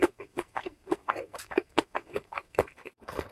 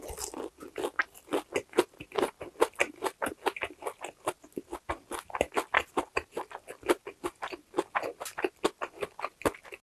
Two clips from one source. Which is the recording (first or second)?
second